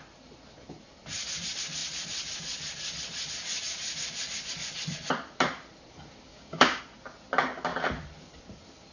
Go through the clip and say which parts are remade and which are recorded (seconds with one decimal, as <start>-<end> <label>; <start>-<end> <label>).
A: 0.0-6.3 recorded; 6.3-6.8 remade; 6.8-8.9 recorded